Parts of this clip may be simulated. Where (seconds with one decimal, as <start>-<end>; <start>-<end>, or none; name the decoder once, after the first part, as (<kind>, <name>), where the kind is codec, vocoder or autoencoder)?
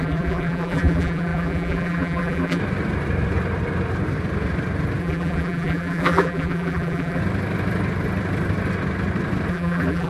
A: 0.0-2.6 (vocoder, BigVGAN v2); 5.0-7.2; 9.5-10.1